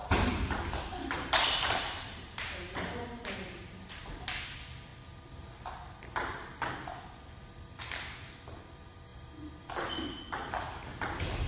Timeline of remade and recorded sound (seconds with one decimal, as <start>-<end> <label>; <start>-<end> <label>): 0.0-4.1 remade; 4.1-11.5 recorded